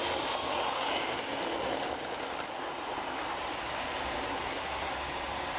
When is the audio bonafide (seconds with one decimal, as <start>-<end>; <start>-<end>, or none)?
0.0-4.3; 4.9-5.6